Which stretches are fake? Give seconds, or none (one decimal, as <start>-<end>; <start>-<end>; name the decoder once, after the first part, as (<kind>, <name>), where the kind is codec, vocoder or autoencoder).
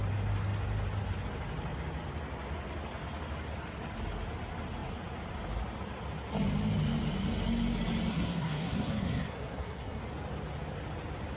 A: 8.1-10.0 (codec, SNAC)